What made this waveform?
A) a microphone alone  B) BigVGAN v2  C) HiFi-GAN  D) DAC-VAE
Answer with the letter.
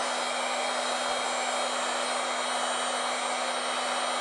A